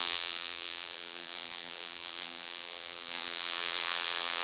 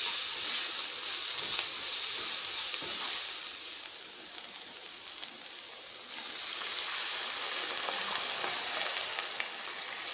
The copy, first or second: first